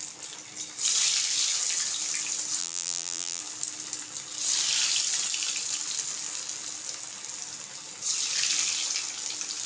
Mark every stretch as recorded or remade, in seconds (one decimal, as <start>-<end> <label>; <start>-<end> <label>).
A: 0.0-2.6 recorded; 2.6-3.4 remade; 3.4-9.7 recorded